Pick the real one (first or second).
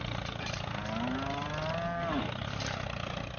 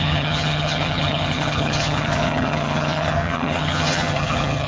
first